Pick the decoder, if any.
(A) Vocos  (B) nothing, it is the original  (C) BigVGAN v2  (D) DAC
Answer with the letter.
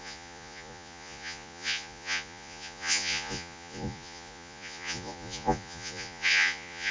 A